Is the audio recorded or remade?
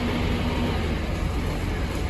recorded